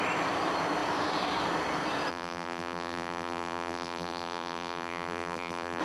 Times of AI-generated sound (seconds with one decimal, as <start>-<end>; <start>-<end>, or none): 2.1-5.8